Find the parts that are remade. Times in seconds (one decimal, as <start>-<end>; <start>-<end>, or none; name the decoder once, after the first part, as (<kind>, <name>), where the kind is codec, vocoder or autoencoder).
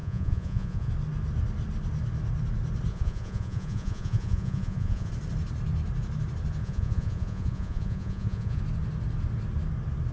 0.0-0.9 (vocoder, Vocos); 2.9-5.1; 6.6-8.6